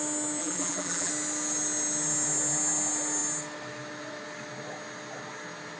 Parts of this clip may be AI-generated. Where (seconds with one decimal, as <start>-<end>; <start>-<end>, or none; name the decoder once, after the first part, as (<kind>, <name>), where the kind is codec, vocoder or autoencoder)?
0.4-1.1 (vocoder, BigVGAN v2)